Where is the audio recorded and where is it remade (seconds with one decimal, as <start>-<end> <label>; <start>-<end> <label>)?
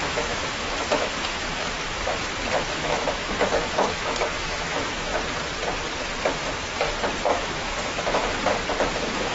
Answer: 0.0-1.5 remade; 1.5-2.7 recorded; 2.7-5.1 remade; 5.1-7.2 recorded; 7.2-8.2 remade; 8.2-8.9 recorded; 8.9-9.3 remade